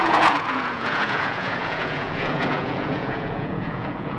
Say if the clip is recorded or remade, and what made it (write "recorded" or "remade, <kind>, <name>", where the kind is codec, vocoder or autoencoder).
remade, vocoder, Vocos